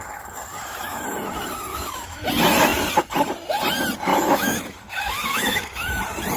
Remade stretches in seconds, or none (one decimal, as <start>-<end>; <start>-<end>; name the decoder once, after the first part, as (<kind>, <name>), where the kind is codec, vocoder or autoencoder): 0.5-1.0 (autoencoder, DAC-VAE); 1.7-2.3; 4.1-6.0